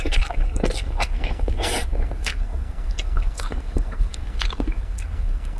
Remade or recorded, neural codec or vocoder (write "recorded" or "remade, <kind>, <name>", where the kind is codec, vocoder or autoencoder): remade, codec, SNAC